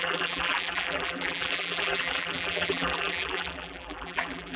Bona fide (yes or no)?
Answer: no